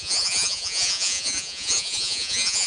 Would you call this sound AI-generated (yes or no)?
yes